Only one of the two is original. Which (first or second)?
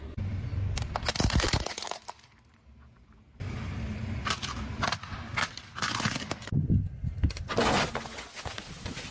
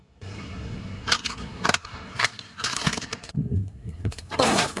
first